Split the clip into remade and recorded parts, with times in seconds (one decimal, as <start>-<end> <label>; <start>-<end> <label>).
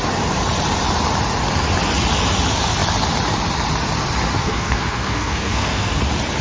0.0-4.4 recorded; 4.4-6.0 remade; 6.0-6.4 recorded